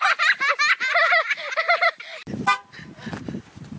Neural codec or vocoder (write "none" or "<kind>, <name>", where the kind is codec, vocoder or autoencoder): none